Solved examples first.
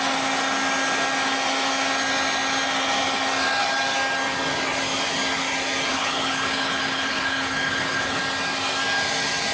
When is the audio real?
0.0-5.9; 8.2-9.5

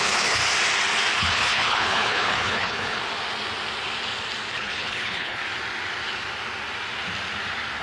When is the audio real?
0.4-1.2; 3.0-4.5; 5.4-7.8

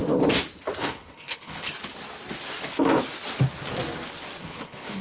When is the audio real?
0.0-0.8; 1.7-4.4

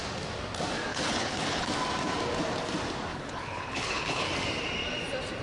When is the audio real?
0.0-0.9; 1.7-3.1; 4.3-5.4

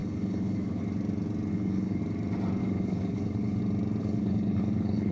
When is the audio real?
0.8-1.5; 2.0-2.6; 3.6-4.0

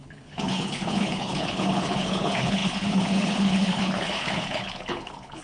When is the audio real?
none

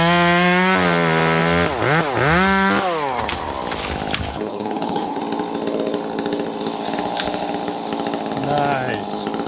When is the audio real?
0.0-4.3; 5.2-9.5

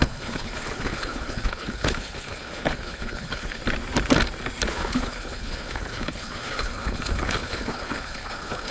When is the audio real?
3.6-4.7